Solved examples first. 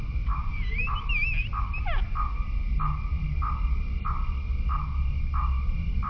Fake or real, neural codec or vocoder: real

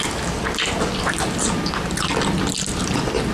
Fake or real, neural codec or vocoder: real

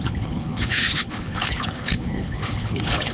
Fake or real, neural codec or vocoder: fake, codec, HILCodec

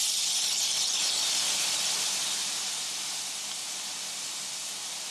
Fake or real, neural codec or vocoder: real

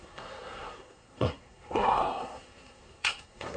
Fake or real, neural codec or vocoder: fake, codec, SNAC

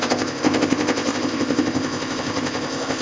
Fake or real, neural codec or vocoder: fake, codec, ZipCodec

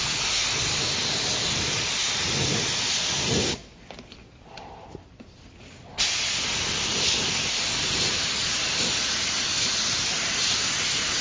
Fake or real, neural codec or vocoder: real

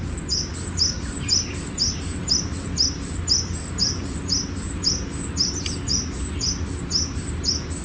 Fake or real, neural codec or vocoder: real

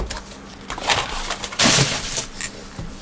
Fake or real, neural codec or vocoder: fake, vocoder, BigVGAN v2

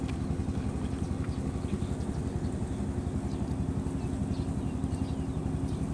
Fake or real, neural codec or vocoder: real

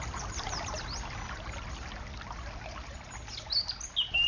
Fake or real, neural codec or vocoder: real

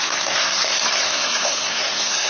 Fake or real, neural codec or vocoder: fake, codec, SNAC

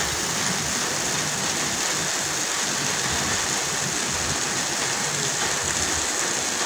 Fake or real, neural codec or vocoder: real